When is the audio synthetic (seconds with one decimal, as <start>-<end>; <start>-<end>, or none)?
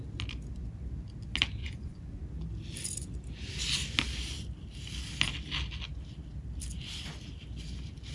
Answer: 1.6-2.2